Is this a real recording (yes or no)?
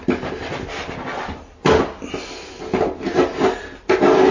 yes